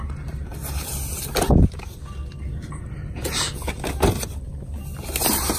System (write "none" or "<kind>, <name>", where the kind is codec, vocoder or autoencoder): none